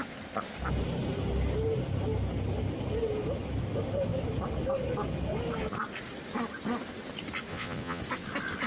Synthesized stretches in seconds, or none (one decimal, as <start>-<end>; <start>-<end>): 7.5-8.0